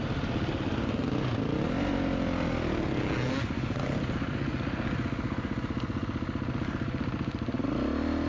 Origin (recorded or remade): recorded